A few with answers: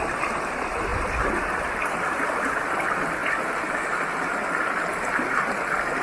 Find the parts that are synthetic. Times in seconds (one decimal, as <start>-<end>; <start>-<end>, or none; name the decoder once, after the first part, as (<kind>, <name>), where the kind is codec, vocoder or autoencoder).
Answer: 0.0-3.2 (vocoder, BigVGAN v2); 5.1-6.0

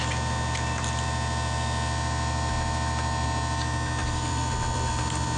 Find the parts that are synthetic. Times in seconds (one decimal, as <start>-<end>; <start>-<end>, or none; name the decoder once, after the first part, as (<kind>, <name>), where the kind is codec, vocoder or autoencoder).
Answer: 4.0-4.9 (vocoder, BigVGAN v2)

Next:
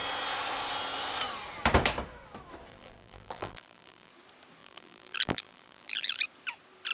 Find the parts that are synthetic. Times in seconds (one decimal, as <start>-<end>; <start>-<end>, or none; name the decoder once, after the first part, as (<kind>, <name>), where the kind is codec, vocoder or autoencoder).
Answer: 2.7-4.1 (vocoder, BigVGAN v2); 4.6-6.2

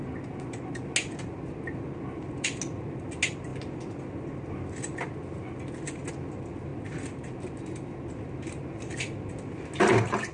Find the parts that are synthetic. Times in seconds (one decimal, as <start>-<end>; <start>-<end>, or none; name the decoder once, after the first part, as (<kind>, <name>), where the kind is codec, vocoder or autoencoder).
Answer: none